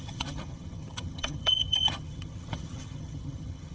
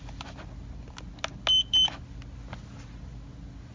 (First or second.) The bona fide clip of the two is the second